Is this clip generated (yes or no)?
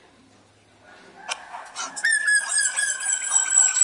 no